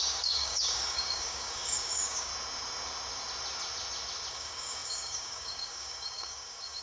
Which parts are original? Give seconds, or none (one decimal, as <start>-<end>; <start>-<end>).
2.3-4.3